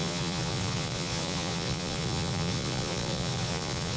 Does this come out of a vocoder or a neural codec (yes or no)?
yes